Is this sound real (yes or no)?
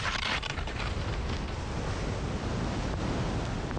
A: yes